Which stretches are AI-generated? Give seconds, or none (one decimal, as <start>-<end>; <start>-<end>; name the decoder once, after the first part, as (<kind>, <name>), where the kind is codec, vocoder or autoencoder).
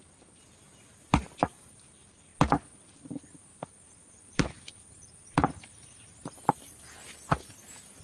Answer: 0.0-2.3 (vocoder, BigVGAN v2); 3.0-6.2